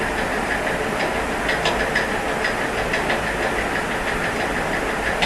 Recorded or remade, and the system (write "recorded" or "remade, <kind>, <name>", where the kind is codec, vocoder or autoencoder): recorded